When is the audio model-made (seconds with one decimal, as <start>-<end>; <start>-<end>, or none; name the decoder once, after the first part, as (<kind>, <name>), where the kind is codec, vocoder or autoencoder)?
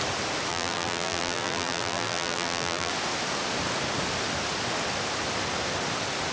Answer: 0.5-2.9 (vocoder, BigVGAN v2)